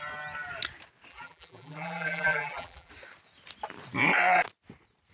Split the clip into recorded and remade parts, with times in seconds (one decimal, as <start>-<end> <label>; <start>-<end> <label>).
0.0-1.1 recorded; 1.1-2.9 remade; 2.9-5.1 recorded